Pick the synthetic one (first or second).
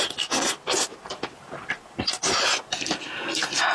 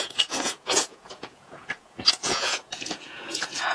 second